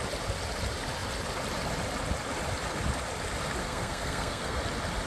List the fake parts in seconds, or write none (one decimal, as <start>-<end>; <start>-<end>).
3.6-4.6